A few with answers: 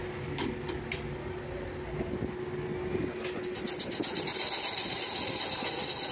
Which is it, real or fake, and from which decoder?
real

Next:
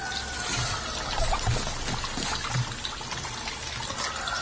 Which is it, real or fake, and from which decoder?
real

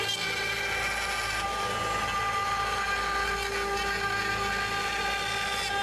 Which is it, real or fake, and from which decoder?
real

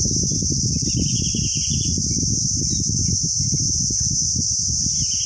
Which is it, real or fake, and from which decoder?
real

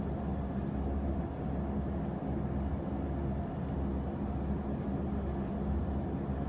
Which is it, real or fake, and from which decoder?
real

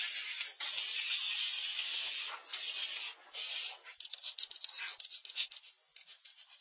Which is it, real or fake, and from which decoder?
real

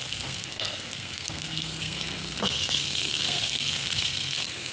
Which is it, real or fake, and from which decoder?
fake, codec, SNAC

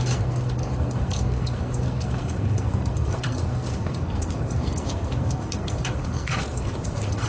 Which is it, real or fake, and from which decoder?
fake, codec, SNAC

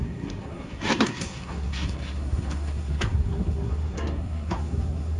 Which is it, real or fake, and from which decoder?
fake, codec, SNAC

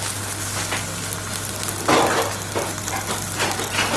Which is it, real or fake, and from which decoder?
real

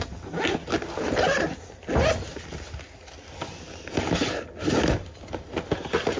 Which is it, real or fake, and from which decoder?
real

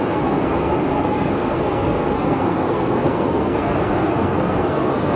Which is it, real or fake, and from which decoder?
fake, codec, SNAC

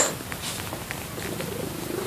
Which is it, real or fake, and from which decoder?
real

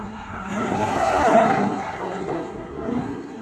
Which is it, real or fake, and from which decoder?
fake, codec, SNAC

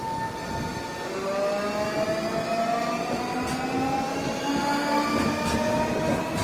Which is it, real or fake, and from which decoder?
real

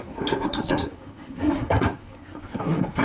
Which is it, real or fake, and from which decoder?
fake, codec, SNAC